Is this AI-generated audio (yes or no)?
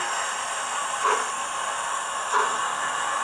no